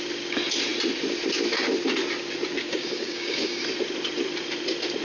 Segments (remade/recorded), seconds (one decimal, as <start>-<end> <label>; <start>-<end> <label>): 0.0-2.6 recorded; 2.6-3.6 remade; 3.6-5.0 recorded